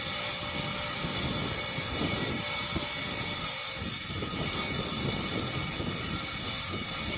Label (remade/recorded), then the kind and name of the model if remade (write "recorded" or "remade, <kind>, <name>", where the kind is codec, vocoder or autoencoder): recorded